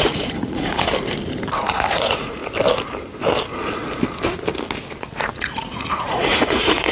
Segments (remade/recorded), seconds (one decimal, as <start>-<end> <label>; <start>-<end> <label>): 0.0-0.9 remade; 0.9-1.6 recorded; 1.6-2.4 remade; 2.4-5.0 recorded; 5.0-6.9 remade